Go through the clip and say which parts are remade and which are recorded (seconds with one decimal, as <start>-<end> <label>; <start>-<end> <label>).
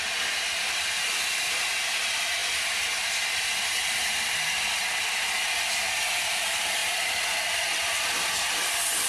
0.0-9.1 recorded